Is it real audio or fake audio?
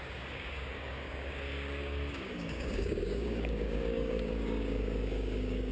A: fake